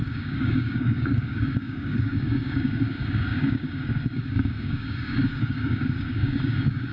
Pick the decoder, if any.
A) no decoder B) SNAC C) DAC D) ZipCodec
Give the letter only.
C